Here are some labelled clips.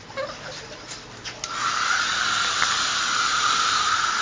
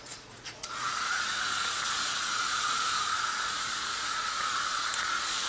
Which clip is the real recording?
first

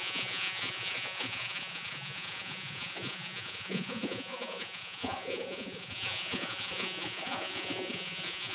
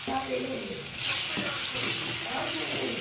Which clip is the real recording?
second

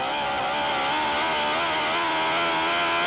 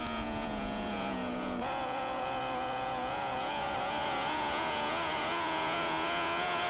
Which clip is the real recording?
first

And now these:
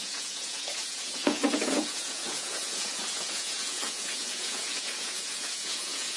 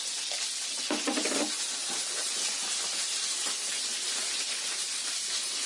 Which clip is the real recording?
second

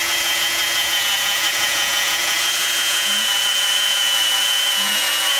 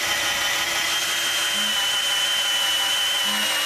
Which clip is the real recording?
second